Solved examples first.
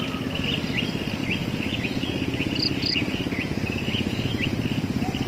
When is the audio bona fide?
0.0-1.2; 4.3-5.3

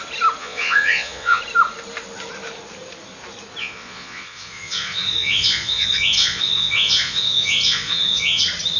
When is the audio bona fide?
0.0-0.4; 1.4-3.6; 8.4-8.8

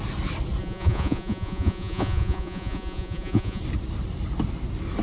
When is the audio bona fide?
0.0-0.6; 3.6-5.0

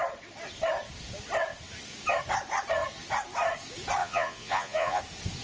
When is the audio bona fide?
0.0-4.0; 5.0-5.4